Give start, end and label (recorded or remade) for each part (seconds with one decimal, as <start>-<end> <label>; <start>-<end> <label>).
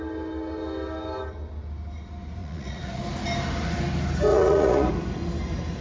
0.0-2.4 recorded; 2.4-3.0 remade; 3.0-4.3 recorded; 4.3-4.9 remade; 4.9-5.8 recorded